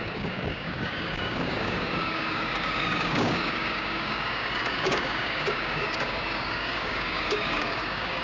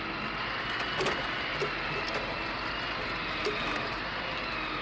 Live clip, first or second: second